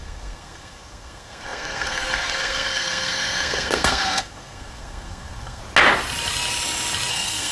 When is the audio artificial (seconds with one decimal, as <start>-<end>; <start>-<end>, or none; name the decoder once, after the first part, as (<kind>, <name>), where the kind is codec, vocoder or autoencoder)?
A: 0.0-5.6 (codec, SNAC); 7.1-7.5